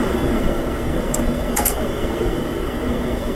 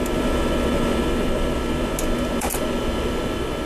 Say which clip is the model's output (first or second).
first